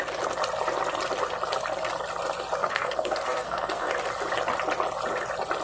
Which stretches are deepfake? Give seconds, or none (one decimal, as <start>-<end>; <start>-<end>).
2.6-3.9